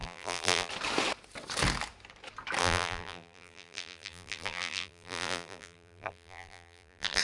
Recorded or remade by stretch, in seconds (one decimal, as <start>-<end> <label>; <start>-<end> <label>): 0.0-0.7 remade; 0.7-2.6 recorded; 2.6-7.2 remade